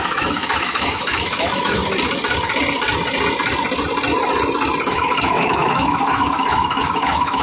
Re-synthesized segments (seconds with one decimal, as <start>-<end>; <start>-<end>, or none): 0.0-1.8; 4.9-7.4